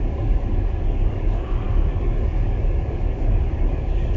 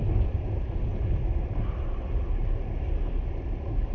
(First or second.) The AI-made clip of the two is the first